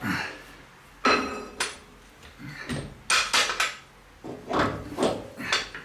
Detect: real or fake real